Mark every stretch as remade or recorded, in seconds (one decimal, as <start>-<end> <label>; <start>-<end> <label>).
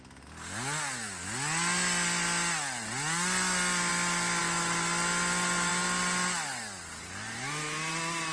0.0-8.3 recorded